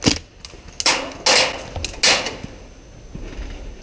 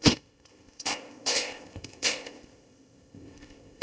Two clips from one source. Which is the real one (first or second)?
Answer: first